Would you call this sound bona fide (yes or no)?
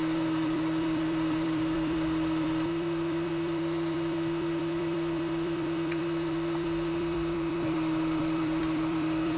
no